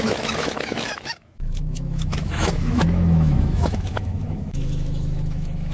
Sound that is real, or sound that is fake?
fake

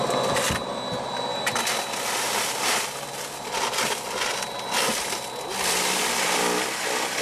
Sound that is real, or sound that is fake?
real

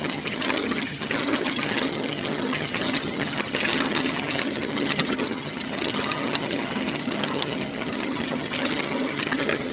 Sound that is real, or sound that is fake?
fake